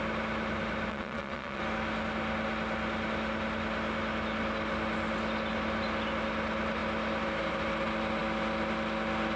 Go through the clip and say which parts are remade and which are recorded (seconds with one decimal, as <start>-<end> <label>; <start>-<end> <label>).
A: 0.0-0.9 recorded; 0.9-1.6 remade; 1.6-9.4 recorded